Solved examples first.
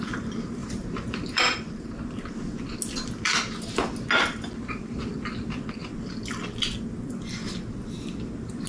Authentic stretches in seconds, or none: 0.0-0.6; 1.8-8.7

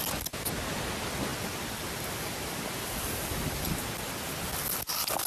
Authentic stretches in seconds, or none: 0.0-1.3; 3.7-5.3